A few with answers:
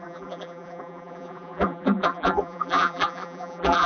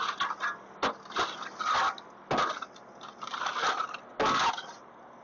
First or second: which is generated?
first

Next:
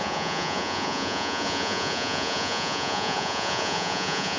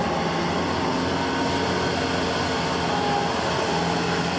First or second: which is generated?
first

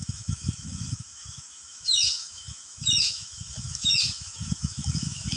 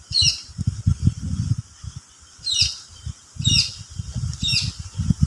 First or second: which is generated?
first